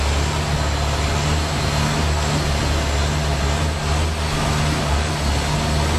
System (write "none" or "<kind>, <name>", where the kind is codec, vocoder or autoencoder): none